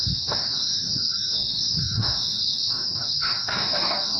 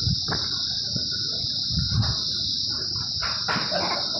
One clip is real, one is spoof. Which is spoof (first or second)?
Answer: first